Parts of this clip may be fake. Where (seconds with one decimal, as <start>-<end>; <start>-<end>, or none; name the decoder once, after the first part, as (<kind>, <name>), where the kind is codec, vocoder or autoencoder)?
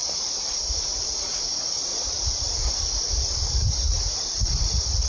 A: none